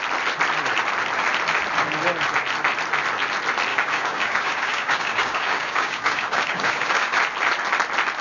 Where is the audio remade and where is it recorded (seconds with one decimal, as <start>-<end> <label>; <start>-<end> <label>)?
0.0-3.7 recorded; 3.7-7.2 remade; 7.2-8.2 recorded